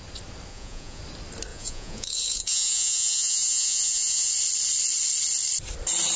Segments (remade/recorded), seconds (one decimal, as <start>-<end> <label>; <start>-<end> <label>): 0.0-0.5 recorded; 0.5-1.0 remade; 1.0-1.5 recorded; 1.5-4.3 remade; 4.3-6.2 recorded

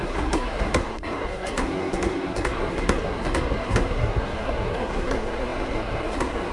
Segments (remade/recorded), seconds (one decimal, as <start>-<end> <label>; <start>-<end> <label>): 0.0-6.5 remade

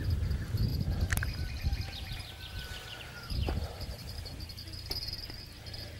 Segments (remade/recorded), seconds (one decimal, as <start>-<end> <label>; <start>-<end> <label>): 0.0-0.7 recorded; 0.7-4.3 remade; 4.3-6.0 recorded